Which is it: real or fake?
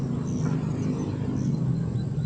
real